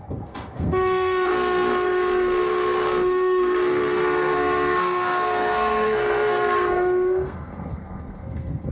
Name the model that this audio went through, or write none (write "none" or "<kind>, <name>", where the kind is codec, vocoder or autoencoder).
codec, SNAC